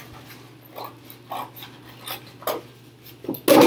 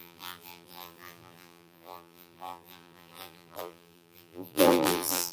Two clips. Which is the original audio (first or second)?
first